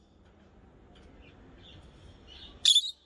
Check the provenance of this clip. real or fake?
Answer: real